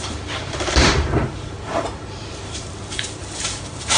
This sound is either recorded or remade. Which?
remade